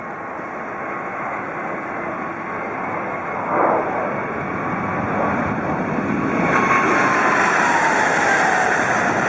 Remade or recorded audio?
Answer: recorded